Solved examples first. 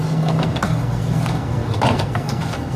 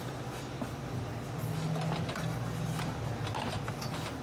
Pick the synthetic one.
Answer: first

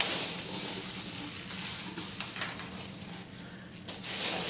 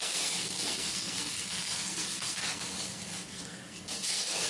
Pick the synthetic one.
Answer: second